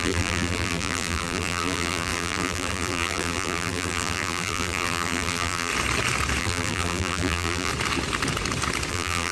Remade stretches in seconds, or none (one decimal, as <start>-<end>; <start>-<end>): 0.0-5.7; 6.4-7.7; 8.9-9.3